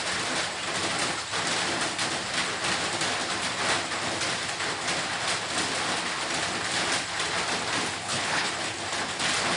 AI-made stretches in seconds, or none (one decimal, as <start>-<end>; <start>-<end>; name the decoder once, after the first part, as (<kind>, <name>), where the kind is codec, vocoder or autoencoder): 8.0-8.5 (codec, HILCodec)